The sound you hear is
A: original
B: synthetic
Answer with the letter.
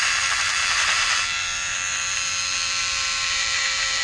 B